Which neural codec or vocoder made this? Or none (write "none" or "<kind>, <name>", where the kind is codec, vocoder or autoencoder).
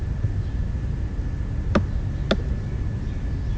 none